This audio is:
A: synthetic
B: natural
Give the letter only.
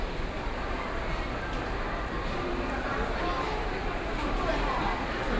B